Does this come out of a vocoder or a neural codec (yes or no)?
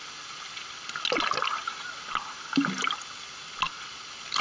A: no